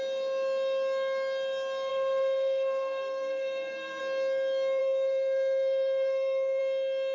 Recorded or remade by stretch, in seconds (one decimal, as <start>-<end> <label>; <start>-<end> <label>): 0.0-1.9 recorded; 1.9-4.0 remade; 4.0-4.8 recorded; 4.8-6.6 remade; 6.6-7.1 recorded